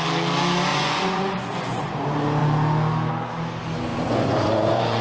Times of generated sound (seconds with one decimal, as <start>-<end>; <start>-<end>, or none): 0.7-1.9; 3.9-5.0